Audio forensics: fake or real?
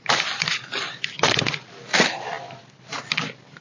real